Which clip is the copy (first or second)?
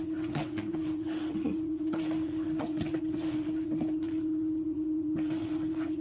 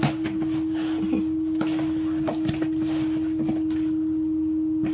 first